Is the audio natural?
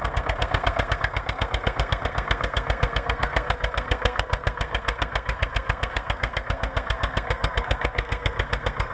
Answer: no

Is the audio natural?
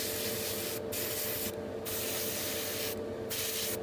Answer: yes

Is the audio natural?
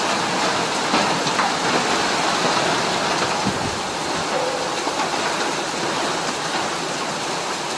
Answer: yes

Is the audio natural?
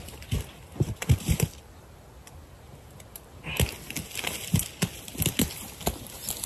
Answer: yes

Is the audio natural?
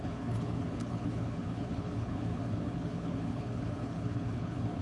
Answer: no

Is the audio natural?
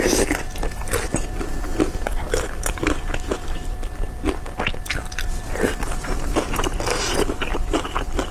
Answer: yes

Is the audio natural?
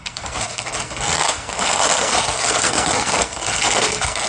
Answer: no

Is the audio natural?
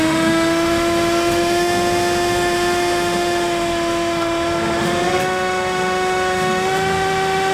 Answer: no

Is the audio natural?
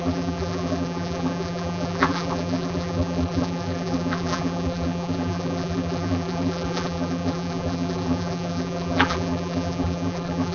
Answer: no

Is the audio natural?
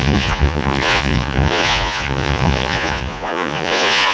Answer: no